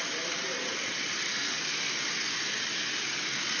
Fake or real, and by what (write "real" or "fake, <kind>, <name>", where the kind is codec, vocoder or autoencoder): real